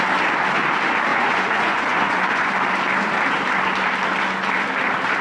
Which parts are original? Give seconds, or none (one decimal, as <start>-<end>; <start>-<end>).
0.0-1.1; 2.5-5.2